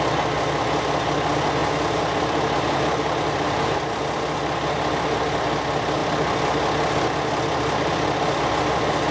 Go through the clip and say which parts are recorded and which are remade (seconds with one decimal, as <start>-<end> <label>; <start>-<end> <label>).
0.0-1.6 recorded; 1.6-3.9 remade; 3.9-6.0 recorded; 6.0-8.5 remade; 8.5-9.1 recorded